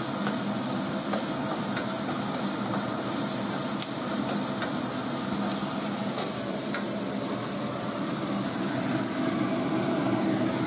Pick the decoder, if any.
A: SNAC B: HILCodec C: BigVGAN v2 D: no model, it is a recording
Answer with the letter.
D